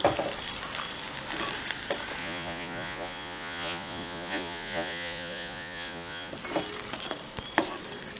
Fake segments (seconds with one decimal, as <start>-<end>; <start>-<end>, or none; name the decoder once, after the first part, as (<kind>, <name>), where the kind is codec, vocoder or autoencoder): 2.2-6.3 (vocoder, Vocos)